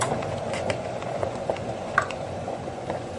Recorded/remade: remade